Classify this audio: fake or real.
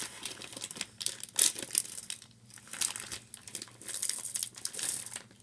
real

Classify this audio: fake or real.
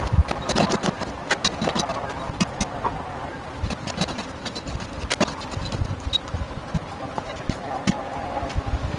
real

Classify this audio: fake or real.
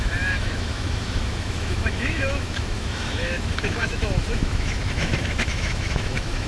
fake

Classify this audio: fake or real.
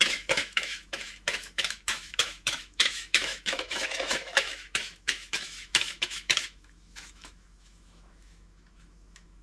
fake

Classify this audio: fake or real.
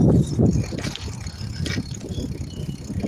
real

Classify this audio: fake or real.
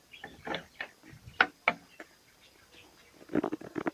real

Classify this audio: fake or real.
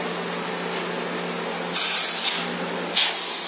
real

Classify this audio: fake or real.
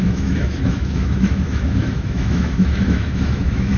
fake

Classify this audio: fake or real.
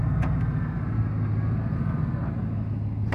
real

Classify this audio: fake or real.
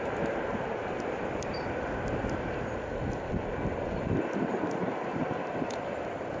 real